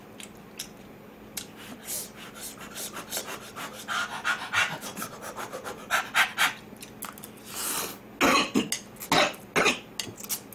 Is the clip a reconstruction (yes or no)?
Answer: no